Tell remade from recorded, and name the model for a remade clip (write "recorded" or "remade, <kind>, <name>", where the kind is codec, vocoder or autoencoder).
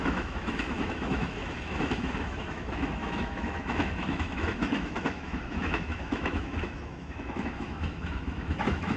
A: remade, autoencoder, DAC-VAE